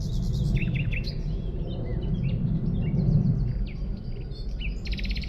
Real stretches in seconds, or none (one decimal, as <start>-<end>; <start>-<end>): 0.0-0.6; 1.1-5.3